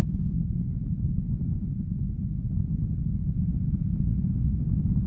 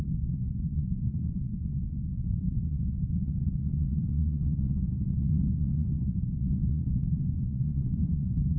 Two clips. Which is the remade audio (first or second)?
second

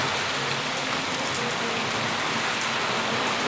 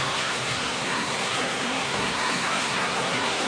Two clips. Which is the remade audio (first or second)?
second